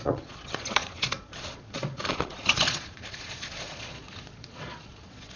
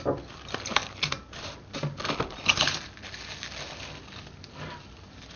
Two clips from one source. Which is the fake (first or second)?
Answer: first